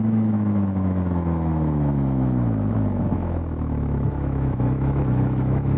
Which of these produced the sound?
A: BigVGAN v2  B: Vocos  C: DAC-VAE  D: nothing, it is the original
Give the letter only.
C